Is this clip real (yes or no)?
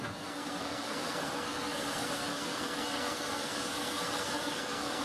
no